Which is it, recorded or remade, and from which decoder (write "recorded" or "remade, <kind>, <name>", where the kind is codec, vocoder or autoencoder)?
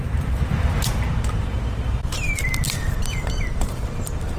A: remade, vocoder, BigVGAN v2